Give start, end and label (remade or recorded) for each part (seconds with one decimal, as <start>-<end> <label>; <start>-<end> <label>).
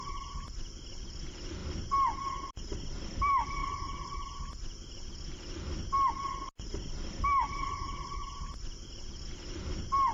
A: 0.0-3.6 remade; 3.6-6.1 recorded; 6.1-8.2 remade; 8.2-9.3 recorded; 9.3-10.1 remade